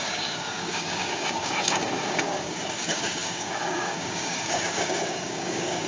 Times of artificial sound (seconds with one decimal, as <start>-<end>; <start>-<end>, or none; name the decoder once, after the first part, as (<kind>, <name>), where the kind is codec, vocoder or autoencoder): 0.0-5.9 (codec, DAC)